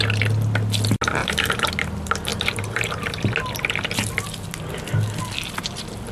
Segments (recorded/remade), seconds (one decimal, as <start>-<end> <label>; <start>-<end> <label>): 0.0-1.2 recorded; 1.2-1.7 remade; 1.7-2.3 recorded; 2.3-3.2 remade; 3.2-6.1 recorded